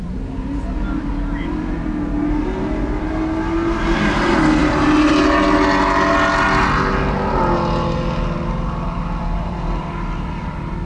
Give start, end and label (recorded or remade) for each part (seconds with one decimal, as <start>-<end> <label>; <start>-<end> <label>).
0.0-10.9 recorded